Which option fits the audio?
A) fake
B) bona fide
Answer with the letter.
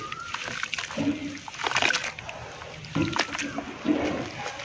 B